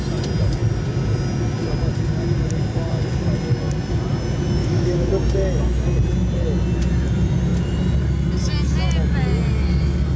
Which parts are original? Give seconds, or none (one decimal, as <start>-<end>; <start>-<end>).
0.0-4.6; 5.1-10.2